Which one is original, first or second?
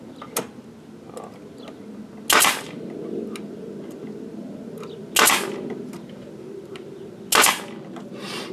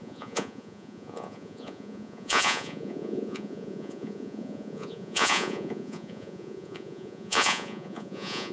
first